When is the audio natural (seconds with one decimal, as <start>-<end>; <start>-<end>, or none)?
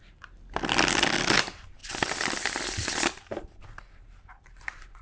0.0-1.8